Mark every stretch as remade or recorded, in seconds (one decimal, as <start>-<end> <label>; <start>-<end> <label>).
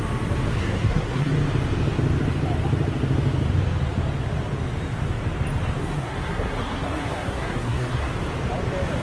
0.0-0.5 recorded; 0.5-1.3 remade; 1.3-5.8 recorded; 5.8-8.1 remade; 8.1-9.0 recorded